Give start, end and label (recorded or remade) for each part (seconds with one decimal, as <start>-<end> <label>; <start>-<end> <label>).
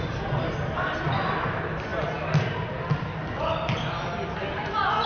0.0-5.1 recorded